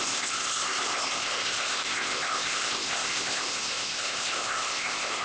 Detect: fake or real fake